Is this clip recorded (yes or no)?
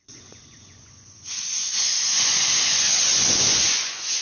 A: no